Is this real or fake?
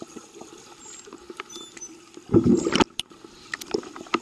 real